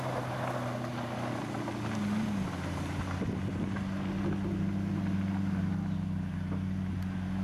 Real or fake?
real